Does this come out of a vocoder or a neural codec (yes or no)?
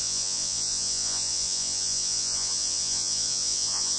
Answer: yes